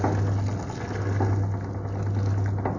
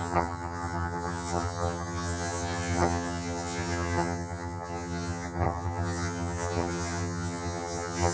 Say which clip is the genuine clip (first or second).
first